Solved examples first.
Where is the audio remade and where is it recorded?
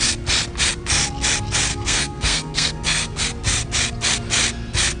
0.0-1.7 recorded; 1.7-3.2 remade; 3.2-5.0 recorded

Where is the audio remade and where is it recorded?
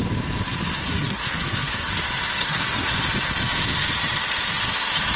0.0-0.8 recorded; 0.8-1.9 remade; 1.9-2.4 recorded; 2.4-2.9 remade; 2.9-5.2 recorded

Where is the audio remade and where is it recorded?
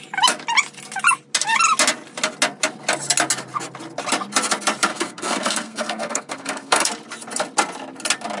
0.0-4.9 recorded; 4.9-6.9 remade; 6.9-8.4 recorded